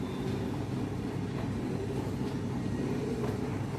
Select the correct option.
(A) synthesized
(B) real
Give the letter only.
B